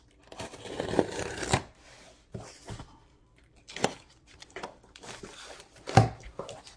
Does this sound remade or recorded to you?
remade